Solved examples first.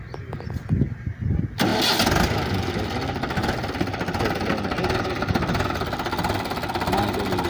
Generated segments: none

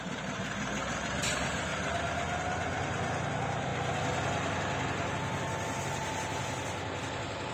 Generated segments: 0.0-1.7 (vocoder, BigVGAN v2); 3.3-3.7

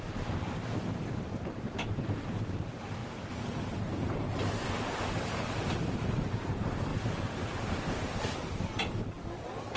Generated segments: 0.0-0.9 (vocoder, BigVGAN v2); 1.5-9.8

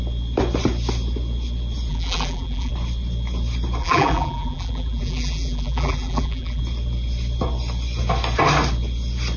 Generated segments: 1.9-2.7 (vocoder, BigVGAN v2); 3.8-6.6

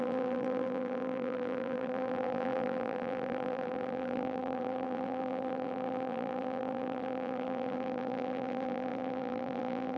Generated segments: 0.0-10.0 (vocoder, BigVGAN v2)

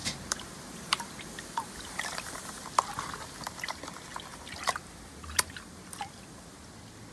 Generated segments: 0.0-2.6 (vocoder, BigVGAN v2); 4.3-6.6